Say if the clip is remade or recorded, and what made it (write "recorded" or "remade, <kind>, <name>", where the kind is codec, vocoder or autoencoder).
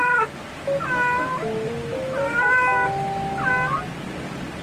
recorded